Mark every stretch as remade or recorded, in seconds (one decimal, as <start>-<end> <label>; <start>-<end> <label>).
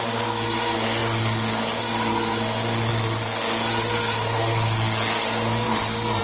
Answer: 0.0-6.2 recorded